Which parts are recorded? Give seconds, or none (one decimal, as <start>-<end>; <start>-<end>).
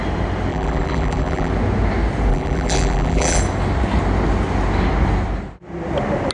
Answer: 0.0-0.5; 1.5-2.3; 3.4-6.3